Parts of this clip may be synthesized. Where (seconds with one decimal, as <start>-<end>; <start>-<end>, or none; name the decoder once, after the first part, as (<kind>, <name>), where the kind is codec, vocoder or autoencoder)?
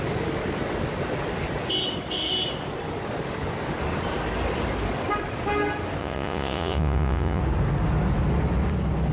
6.0-7.4 (vocoder, Vocos)